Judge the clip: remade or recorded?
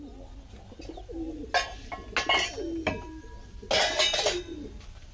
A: recorded